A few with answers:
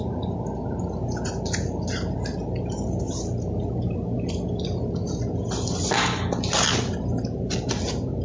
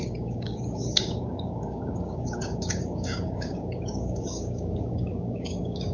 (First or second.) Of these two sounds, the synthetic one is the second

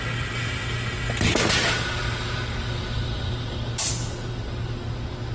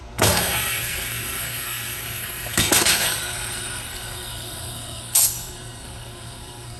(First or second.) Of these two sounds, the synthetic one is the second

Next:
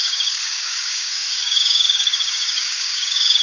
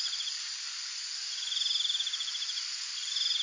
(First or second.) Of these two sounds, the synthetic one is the first